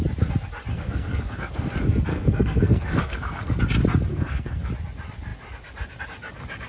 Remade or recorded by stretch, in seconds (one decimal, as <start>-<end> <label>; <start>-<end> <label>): 0.0-0.7 recorded; 0.7-1.7 remade; 1.7-2.1 recorded; 2.1-3.6 remade; 3.6-4.1 recorded; 4.1-4.7 remade; 4.7-6.7 recorded